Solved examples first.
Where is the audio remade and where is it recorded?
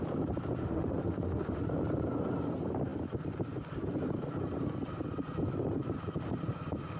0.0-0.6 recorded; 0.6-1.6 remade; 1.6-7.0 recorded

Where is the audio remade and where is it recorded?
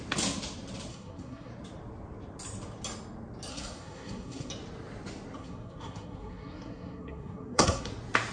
0.0-0.9 recorded; 0.9-1.5 remade; 1.5-3.5 recorded; 3.5-4.5 remade; 4.5-5.4 recorded; 5.4-7.9 remade; 7.9-8.3 recorded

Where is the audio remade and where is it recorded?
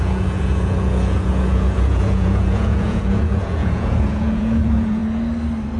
0.0-5.0 remade; 5.0-5.8 recorded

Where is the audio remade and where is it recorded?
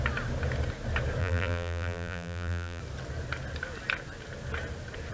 0.0-1.2 recorded; 1.2-2.8 remade; 2.8-5.1 recorded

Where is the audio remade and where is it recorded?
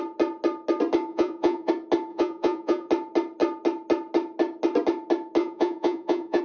0.0-1.1 recorded; 1.1-1.7 remade; 1.7-2.1 recorded; 2.1-2.9 remade; 2.9-5.4 recorded; 5.4-6.4 remade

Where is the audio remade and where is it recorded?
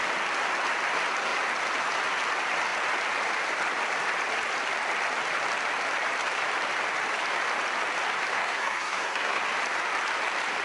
0.0-8.3 recorded; 8.3-9.4 remade; 9.4-10.6 recorded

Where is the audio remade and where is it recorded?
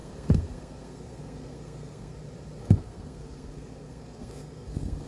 0.0-2.1 remade; 2.1-2.6 recorded; 2.6-5.1 remade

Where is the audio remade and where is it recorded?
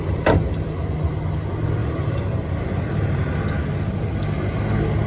0.0-0.8 remade; 0.8-1.8 recorded; 1.8-3.4 remade; 3.4-5.1 recorded